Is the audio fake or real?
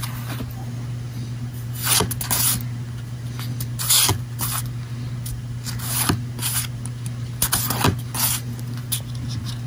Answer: real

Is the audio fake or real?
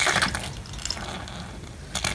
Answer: real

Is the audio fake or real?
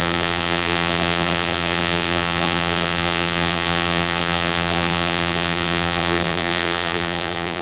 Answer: fake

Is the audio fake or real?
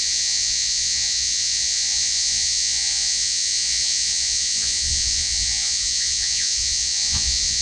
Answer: fake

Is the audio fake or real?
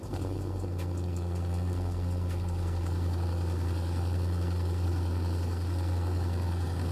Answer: fake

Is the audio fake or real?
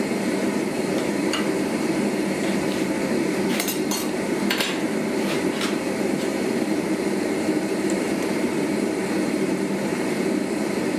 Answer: fake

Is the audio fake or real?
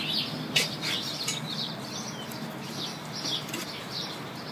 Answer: real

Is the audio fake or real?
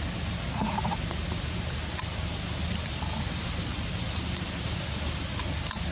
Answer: fake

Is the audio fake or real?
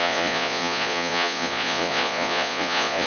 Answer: fake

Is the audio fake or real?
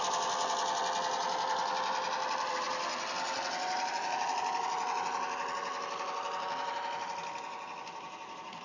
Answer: real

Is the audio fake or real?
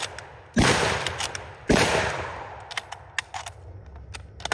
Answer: real